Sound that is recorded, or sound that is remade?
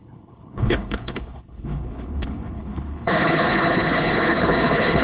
remade